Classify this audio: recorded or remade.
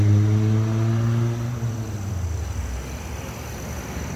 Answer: recorded